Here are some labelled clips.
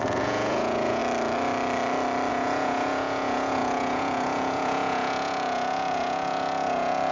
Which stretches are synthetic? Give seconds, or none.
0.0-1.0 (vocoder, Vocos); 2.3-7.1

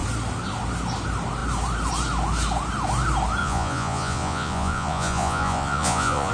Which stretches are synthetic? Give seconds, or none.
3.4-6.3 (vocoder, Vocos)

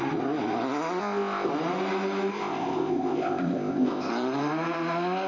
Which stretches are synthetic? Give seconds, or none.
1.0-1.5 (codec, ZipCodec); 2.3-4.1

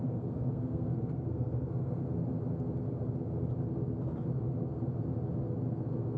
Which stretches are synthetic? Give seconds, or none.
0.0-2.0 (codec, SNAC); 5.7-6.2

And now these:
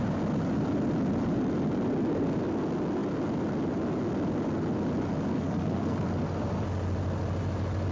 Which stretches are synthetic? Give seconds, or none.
5.3-6.1 (codec, SNAC)

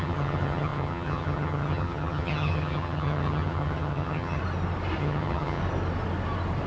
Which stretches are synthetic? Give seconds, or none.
0.0-4.4 (vocoder, HiFi-GAN); 5.0-5.6